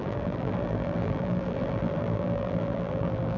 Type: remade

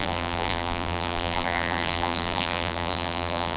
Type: remade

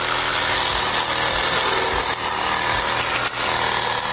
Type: recorded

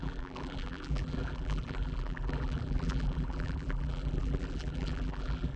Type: remade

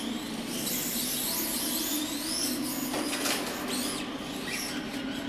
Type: recorded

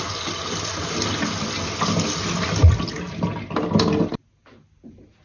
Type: recorded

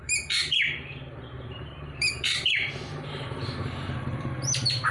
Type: remade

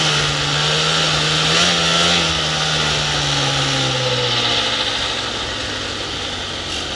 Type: recorded